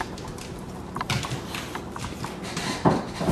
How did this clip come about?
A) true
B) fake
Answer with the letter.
B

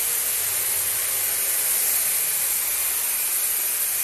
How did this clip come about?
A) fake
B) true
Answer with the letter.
B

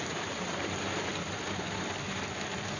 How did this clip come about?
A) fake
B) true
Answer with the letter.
B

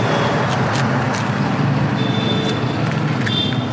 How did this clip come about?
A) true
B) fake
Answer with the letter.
A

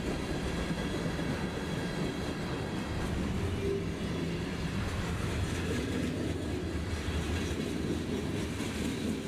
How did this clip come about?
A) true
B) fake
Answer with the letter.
A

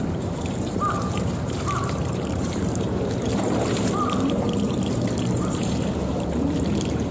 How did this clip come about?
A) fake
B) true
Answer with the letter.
A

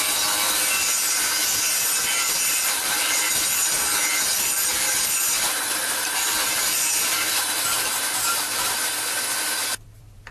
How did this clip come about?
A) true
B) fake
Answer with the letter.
B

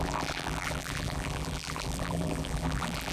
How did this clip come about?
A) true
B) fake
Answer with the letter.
B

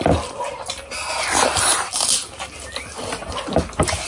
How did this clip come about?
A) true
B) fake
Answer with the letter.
A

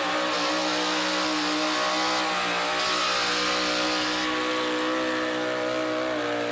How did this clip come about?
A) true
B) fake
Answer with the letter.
A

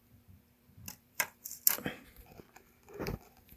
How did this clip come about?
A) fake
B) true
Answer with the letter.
A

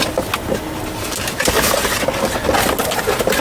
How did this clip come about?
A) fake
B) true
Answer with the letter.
B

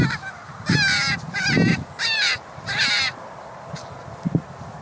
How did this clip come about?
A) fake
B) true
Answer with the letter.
A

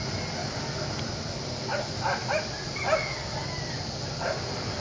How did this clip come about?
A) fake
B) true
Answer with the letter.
B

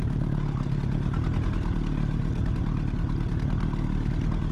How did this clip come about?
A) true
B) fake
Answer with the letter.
A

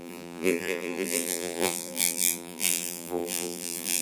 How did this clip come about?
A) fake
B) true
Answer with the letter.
A